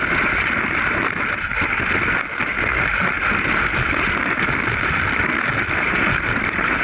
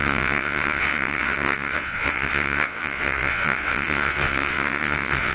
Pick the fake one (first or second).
second